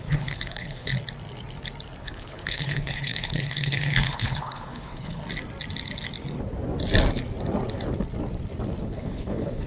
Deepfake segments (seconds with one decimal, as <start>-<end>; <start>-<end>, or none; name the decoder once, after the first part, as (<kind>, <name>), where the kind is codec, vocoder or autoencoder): 0.0-0.9 (codec, HILCodec); 2.0-5.2; 8.8-9.7